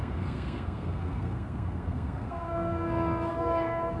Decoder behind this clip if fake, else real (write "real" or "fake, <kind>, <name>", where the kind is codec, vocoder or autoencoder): fake, codec, SNAC